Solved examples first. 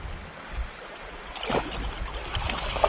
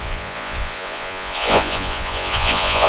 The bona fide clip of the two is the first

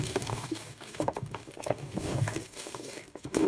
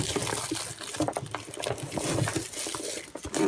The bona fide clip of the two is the second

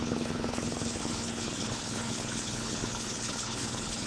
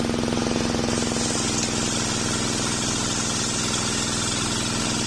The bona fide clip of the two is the second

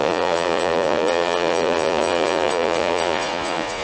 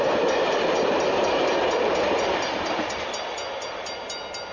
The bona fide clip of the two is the second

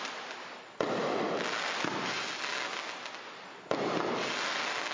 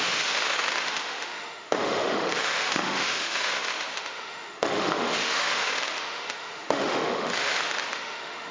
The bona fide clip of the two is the first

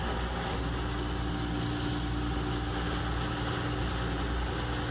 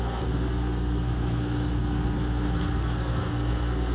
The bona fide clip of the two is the first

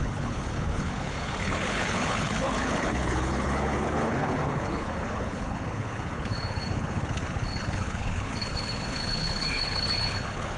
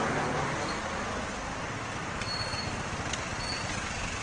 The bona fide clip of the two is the second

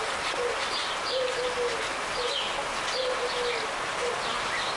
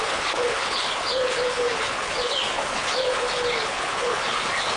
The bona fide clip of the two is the first